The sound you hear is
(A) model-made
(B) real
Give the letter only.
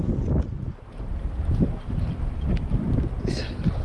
B